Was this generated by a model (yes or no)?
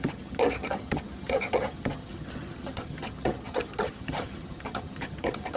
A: yes